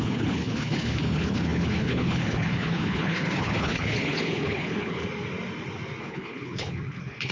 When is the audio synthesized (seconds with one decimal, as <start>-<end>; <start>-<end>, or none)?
0.0-5.0; 6.0-7.3